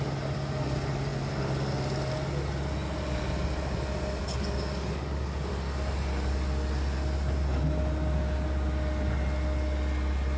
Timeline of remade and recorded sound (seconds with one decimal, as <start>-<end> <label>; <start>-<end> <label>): 0.0-4.2 recorded; 4.2-5.5 remade; 5.5-10.4 recorded